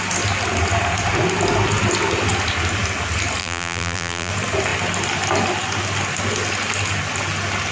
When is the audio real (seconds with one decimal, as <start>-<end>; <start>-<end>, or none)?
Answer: 0.0-3.4; 4.3-7.7